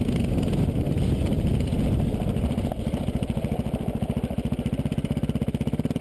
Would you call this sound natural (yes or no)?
yes